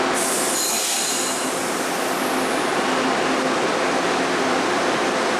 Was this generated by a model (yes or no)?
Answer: no